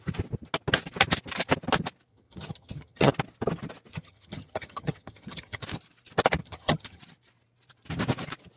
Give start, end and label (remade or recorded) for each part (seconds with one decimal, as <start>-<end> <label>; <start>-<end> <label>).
0.0-2.1 recorded; 2.1-3.1 remade; 3.1-3.9 recorded; 3.9-5.6 remade; 5.6-6.4 recorded; 6.4-7.0 remade; 7.0-8.6 recorded